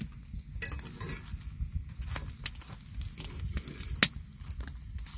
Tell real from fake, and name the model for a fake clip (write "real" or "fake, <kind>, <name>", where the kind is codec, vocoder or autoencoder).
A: real